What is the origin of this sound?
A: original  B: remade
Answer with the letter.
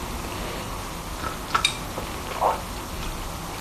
A